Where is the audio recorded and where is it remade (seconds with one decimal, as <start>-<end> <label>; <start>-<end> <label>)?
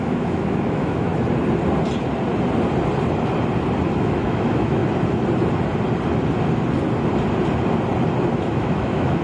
0.0-1.1 remade; 1.1-3.9 recorded; 3.9-4.8 remade; 4.8-8.4 recorded; 8.4-9.2 remade